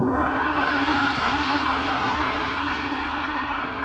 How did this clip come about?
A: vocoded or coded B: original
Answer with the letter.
A